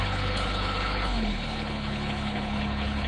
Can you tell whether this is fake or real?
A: fake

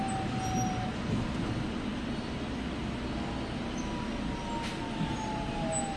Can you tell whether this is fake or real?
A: real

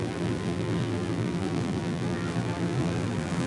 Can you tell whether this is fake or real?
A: fake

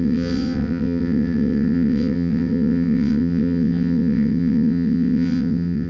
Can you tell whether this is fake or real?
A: fake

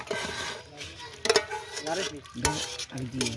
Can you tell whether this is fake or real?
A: real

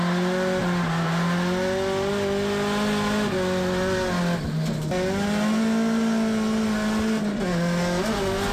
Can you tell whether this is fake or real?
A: real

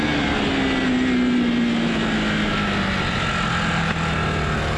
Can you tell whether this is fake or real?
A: real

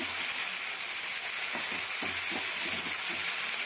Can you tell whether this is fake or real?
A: real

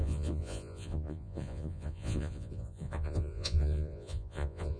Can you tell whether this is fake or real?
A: fake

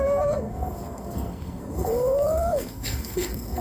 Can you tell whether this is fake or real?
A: fake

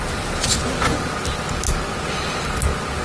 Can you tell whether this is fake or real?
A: real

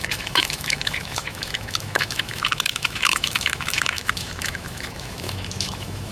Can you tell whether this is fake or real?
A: fake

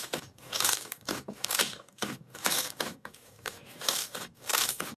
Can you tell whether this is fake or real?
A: fake